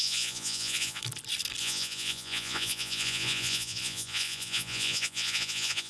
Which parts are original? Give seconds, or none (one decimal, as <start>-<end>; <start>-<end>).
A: 1.0-1.6